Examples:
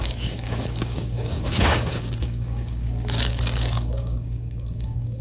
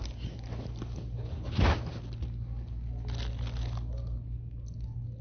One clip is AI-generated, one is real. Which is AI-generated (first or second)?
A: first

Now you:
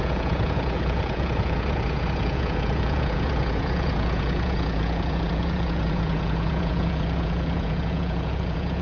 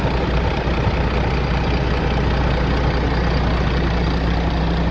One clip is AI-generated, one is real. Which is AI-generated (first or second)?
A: first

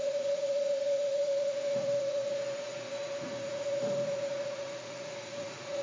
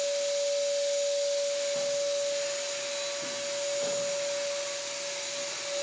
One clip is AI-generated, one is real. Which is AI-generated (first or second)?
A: first